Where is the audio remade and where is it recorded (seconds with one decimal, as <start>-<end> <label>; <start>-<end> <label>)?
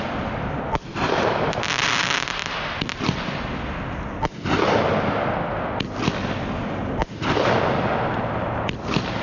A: 0.0-9.2 recorded